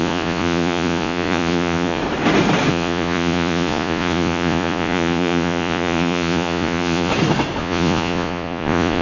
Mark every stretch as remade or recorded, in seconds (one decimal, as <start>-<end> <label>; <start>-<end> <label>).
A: 0.0-2.0 remade; 2.0-2.7 recorded; 2.7-7.1 remade; 7.1-7.6 recorded; 7.6-9.0 remade